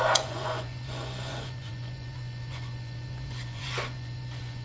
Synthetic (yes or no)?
yes